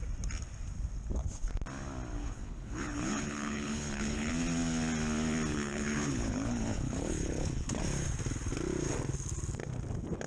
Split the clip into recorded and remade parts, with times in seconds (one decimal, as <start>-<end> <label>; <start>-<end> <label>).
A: 0.0-2.2 recorded; 2.2-4.3 remade; 4.3-5.5 recorded; 5.5-7.8 remade; 7.8-10.3 recorded